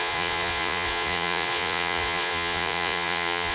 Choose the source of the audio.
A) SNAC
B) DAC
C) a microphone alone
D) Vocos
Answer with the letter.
D